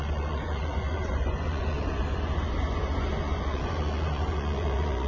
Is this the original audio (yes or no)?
no